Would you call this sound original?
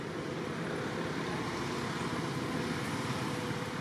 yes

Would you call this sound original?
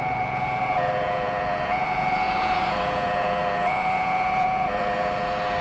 no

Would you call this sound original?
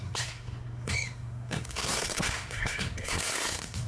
no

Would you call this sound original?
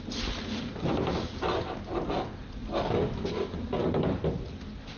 yes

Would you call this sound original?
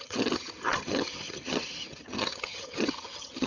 no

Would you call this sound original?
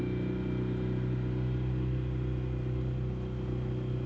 yes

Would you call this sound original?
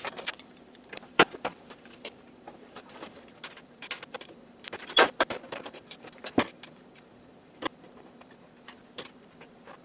no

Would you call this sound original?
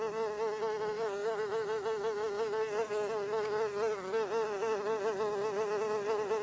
yes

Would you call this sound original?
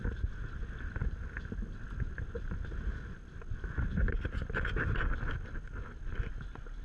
yes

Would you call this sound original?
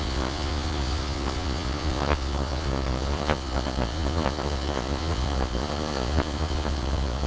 no